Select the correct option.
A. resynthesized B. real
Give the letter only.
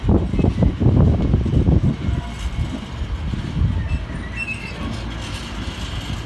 B